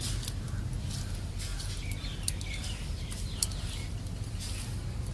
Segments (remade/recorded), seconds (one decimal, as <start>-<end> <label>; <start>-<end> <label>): 0.0-5.1 recorded